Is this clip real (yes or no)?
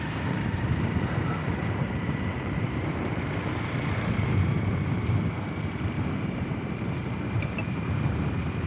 no